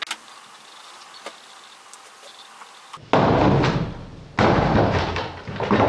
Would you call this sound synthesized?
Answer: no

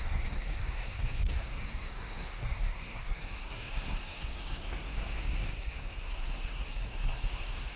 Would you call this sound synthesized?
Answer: yes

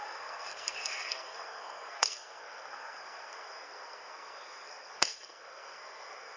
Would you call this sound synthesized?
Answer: yes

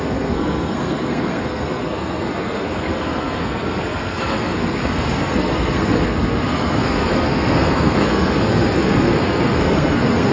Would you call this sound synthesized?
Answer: yes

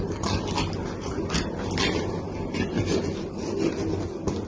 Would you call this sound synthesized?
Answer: no